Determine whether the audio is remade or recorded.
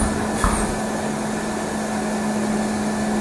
recorded